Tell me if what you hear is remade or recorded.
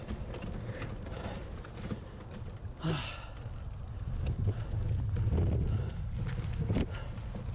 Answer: recorded